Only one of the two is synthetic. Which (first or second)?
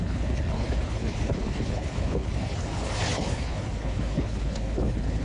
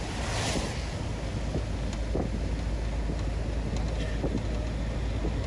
first